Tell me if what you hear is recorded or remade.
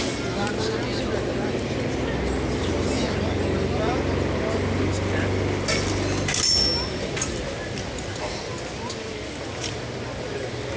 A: recorded